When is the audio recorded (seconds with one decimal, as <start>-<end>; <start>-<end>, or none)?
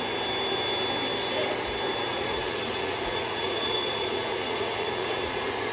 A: 0.0-2.1